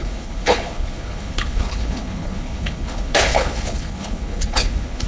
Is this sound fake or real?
fake